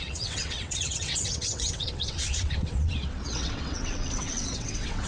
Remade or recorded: remade